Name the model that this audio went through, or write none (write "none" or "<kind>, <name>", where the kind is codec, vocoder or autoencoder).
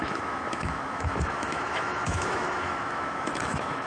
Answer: autoencoder, DAC-VAE